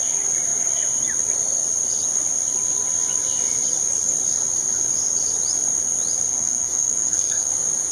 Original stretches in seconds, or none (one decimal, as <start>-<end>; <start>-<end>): 0.0-6.3; 7.5-7.9